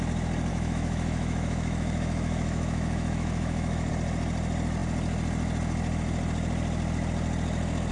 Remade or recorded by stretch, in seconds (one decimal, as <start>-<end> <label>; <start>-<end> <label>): 0.0-0.5 recorded; 0.5-3.9 remade; 3.9-7.9 recorded